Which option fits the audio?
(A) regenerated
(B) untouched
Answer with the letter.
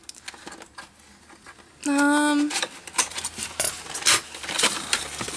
B